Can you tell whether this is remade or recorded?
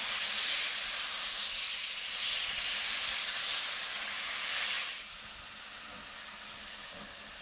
recorded